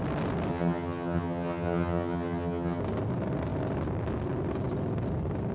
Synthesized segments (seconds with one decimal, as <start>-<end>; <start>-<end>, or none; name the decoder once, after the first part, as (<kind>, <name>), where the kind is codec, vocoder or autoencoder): 0.5-2.8 (vocoder, HiFi-GAN)